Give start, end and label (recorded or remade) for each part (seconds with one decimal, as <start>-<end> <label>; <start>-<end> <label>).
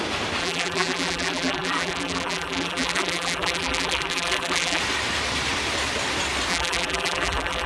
0.0-0.4 recorded; 0.4-4.8 remade; 4.8-6.5 recorded; 6.5-7.7 remade